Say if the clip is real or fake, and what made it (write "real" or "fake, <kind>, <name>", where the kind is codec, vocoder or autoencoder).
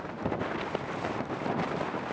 real